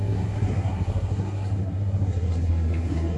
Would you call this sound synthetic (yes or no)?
yes